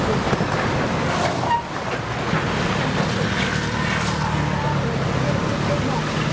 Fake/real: real